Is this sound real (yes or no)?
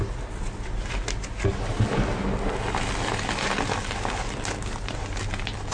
yes